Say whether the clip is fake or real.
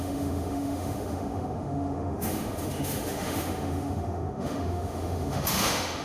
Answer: fake